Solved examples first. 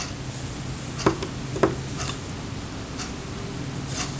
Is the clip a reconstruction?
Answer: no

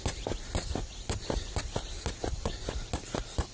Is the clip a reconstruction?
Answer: no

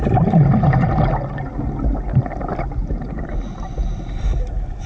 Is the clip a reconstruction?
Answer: no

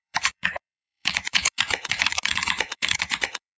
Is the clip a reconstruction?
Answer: yes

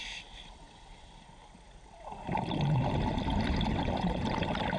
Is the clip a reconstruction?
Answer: yes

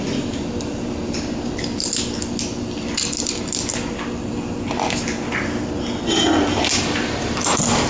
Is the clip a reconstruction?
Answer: no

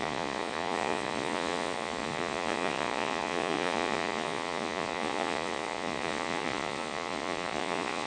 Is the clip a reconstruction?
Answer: yes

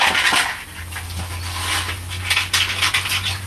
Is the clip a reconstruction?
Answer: no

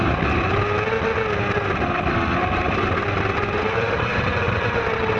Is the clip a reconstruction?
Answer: no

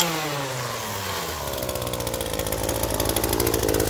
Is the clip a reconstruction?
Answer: no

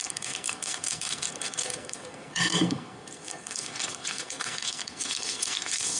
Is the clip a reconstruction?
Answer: yes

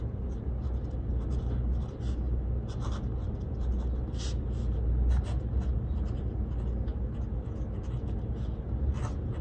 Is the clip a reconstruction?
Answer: no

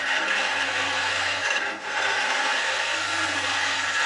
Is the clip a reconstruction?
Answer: yes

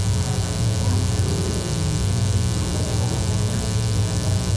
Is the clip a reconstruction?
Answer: no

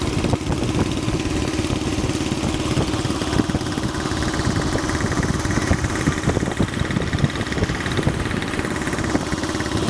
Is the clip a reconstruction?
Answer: no